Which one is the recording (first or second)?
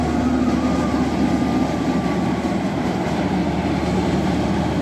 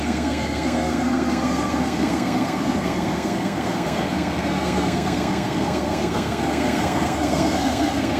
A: first